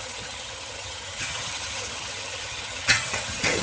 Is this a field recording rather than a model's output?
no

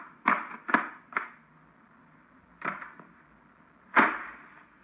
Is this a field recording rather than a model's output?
yes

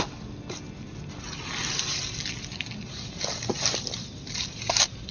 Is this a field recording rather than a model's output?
yes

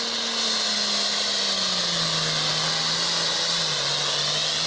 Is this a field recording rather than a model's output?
yes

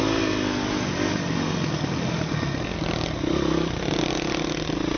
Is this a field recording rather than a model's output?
yes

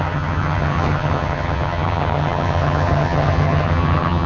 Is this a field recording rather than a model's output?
no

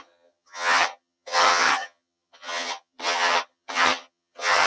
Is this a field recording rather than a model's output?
no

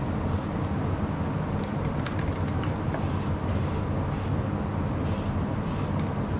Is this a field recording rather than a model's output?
yes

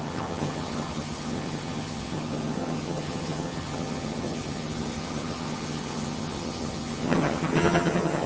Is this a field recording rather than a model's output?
no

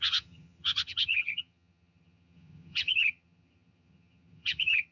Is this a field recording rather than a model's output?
no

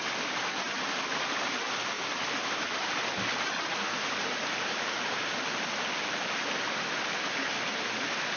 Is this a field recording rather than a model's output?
yes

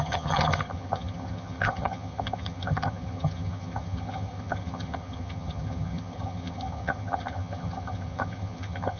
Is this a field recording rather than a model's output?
no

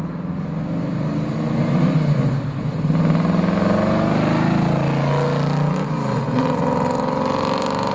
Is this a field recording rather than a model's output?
yes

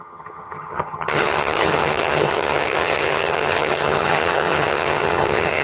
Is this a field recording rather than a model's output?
no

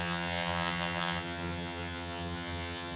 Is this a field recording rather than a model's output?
no